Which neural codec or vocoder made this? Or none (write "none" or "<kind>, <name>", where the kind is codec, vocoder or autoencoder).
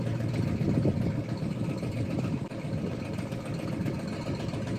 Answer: none